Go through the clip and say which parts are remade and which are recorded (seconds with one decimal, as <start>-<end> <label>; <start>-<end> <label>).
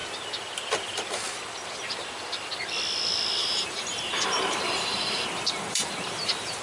0.0-3.4 recorded; 3.4-6.6 remade